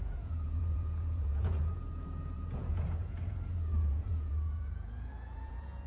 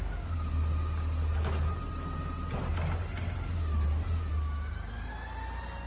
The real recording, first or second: second